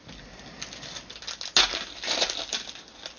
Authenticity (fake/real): real